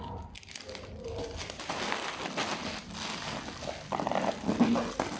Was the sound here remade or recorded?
recorded